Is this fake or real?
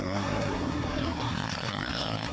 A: fake